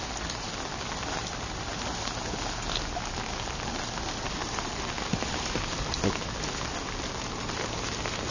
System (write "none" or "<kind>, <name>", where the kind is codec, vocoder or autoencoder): none